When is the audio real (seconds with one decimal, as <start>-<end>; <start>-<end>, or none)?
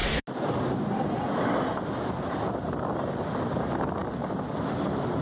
0.0-5.2